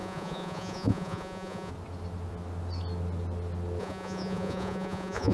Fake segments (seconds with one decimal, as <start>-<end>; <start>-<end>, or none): 0.0-1.7; 3.8-5.3

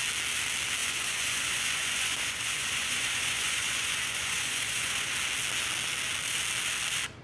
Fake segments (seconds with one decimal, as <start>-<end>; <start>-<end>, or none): 0.8-5.1

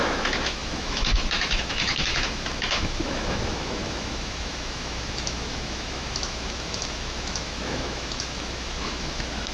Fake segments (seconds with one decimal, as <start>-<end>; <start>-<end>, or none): 0.0-9.5

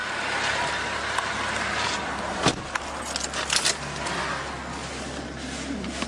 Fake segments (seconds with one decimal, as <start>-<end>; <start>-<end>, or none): 0.0-2.0

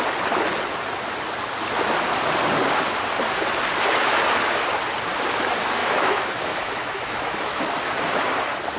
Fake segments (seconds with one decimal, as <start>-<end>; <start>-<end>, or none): 5.8-7.6

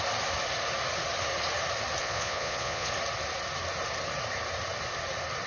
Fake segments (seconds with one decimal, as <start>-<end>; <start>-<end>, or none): 2.0-2.9